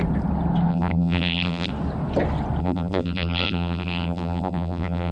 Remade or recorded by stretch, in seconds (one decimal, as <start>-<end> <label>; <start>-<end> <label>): 0.0-0.7 recorded; 0.7-1.7 remade; 1.7-2.6 recorded; 2.6-5.1 remade